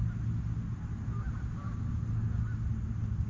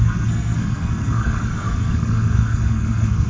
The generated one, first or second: second